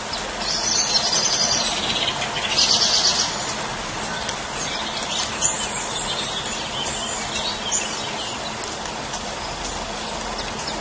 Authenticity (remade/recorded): recorded